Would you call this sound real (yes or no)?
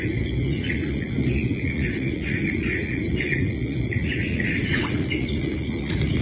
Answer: no